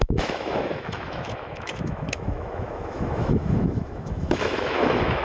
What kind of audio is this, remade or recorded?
remade